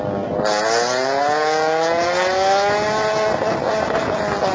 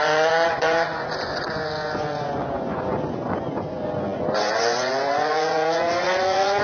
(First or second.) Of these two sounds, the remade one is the second